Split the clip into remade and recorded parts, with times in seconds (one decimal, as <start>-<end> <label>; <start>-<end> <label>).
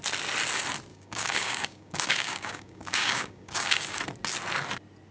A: 0.0-0.9 recorded; 0.9-4.0 remade; 4.0-5.1 recorded